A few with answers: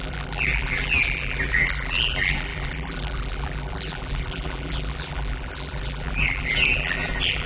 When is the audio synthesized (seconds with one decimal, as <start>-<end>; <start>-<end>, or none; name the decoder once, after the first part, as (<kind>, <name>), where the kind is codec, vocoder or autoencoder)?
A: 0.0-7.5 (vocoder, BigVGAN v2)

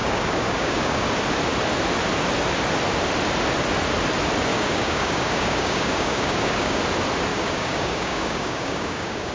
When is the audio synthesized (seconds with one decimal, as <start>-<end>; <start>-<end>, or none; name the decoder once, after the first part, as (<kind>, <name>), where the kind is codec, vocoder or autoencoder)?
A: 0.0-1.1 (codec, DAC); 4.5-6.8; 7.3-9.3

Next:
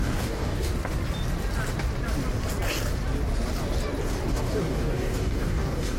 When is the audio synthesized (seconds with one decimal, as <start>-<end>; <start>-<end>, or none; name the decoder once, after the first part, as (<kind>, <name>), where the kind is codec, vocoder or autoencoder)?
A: 0.0-0.7 (codec, DAC); 4.3-6.0